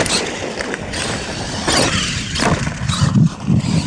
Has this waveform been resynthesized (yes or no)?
no